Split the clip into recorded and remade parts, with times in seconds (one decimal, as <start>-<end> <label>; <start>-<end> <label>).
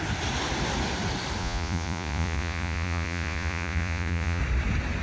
0.0-1.4 recorded; 1.4-4.4 remade; 4.4-5.0 recorded